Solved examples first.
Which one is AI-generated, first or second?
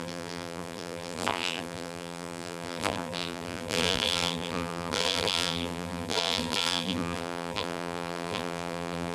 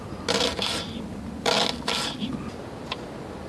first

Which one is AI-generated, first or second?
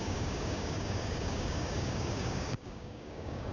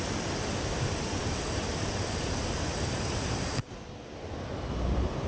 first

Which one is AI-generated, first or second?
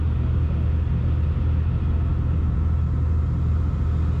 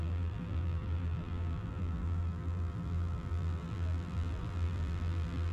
second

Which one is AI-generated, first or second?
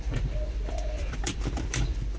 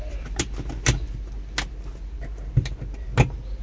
first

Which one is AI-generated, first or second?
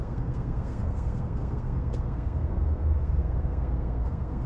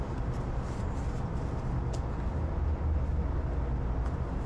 first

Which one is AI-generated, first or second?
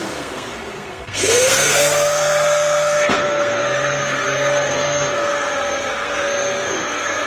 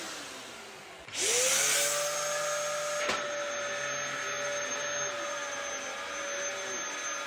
first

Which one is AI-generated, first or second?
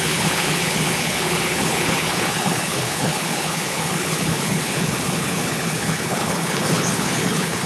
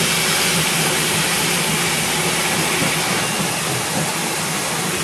first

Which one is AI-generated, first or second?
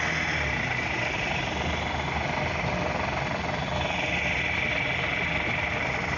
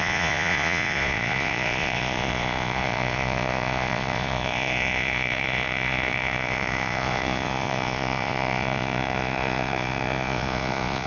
second